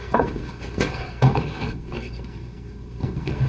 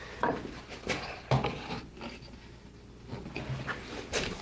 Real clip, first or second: second